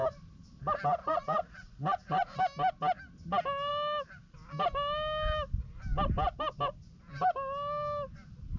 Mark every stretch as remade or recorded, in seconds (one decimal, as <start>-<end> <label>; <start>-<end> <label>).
0.0-1.0 recorded; 1.0-2.4 remade; 2.4-8.6 recorded